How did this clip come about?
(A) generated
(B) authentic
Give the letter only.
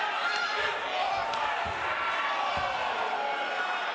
B